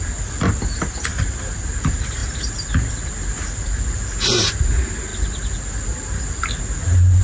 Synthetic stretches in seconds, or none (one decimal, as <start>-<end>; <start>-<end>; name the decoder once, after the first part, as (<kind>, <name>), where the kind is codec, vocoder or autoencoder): none